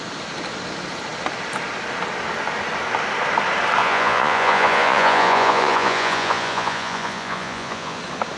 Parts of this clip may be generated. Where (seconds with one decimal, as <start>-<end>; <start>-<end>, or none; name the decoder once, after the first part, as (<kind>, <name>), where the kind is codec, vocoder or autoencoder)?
3.8-8.0 (vocoder, Vocos)

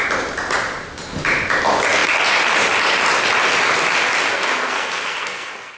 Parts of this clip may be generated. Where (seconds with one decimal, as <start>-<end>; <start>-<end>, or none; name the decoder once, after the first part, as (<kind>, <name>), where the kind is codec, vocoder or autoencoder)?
4.3-5.8 (codec, SNAC)

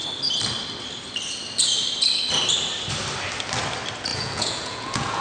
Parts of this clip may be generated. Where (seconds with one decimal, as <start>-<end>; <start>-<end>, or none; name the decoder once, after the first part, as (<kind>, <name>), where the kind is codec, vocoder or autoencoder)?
4.1-5.2 (vocoder, Vocos)

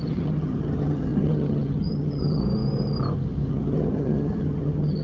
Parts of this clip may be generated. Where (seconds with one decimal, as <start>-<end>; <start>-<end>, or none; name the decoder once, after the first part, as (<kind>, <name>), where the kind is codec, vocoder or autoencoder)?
0.0-2.4 (vocoder, HiFi-GAN); 3.5-5.0

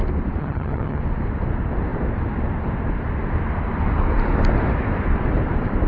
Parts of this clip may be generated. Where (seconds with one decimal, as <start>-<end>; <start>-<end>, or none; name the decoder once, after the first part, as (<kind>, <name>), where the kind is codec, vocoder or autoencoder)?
0.4-1.0 (vocoder, HiFi-GAN)

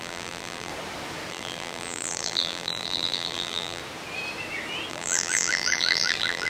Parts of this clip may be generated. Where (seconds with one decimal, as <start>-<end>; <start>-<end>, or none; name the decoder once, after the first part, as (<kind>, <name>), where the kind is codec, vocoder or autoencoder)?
0.0-0.7 (vocoder, BigVGAN v2); 1.3-3.8; 4.9-6.5

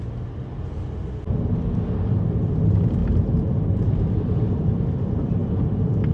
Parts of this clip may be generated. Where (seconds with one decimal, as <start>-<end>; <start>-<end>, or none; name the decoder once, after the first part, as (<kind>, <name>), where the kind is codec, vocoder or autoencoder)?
0.0-3.0 (vocoder, BigVGAN v2); 3.5-5.4

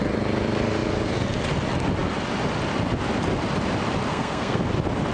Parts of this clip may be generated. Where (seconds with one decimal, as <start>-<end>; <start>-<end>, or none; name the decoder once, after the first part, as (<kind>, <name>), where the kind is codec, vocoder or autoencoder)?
4.1-4.6 (codec, SNAC)